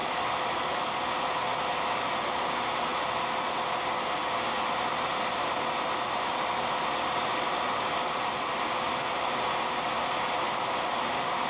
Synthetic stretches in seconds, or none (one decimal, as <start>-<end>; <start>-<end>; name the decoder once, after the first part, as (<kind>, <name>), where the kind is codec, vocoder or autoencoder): 0.0-0.9 (autoencoder, DAC-VAE)